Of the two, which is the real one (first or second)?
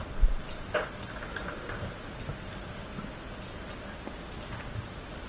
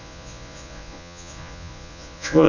first